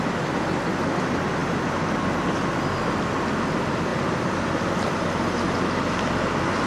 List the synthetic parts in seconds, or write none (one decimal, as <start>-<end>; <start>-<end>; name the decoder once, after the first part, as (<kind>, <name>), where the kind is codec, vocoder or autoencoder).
none